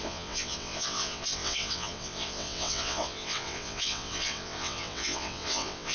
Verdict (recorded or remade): remade